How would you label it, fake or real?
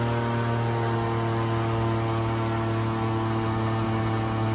real